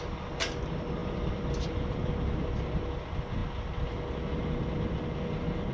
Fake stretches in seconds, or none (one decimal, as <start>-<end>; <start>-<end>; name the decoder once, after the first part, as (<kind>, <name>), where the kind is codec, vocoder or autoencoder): 1.0-2.1 (vocoder, BigVGAN v2)